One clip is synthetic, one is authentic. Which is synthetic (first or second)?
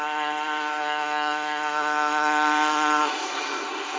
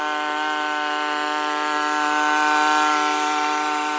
first